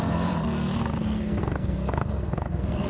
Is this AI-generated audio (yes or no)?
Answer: yes